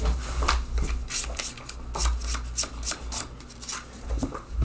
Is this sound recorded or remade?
recorded